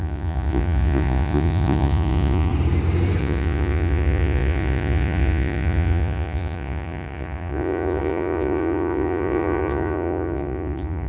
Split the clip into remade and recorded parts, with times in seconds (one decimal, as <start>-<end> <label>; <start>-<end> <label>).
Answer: 0.0-2.5 remade; 2.5-3.2 recorded; 3.2-11.1 remade